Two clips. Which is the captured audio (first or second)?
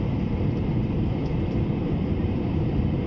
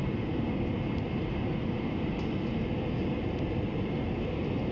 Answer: second